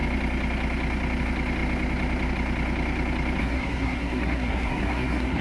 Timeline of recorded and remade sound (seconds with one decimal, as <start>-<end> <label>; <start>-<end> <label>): 0.0-3.4 recorded; 3.4-5.4 remade